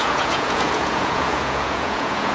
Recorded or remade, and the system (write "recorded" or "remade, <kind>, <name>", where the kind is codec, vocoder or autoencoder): remade, vocoder, Vocos